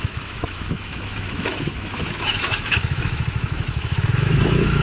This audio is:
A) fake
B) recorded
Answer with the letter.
A